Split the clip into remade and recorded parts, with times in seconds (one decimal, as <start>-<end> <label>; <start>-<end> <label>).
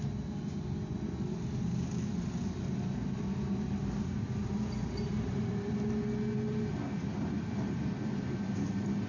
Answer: 0.0-4.1 recorded; 4.1-5.7 remade; 5.7-9.1 recorded